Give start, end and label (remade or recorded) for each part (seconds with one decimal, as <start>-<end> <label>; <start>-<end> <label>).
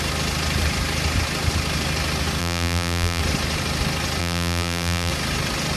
0.0-2.4 recorded; 2.4-3.2 remade; 3.2-4.2 recorded; 4.2-5.1 remade; 5.1-5.8 recorded